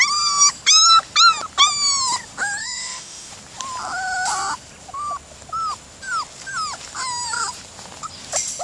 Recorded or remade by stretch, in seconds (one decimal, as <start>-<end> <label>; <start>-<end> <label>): 0.0-2.6 recorded; 2.6-3.3 remade; 3.3-8.6 recorded